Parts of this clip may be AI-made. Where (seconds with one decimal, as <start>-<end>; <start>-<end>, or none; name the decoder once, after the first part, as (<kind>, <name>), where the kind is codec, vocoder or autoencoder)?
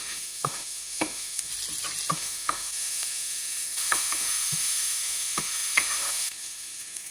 0.0-1.5 (autoencoder, DAC-VAE); 2.1-7.1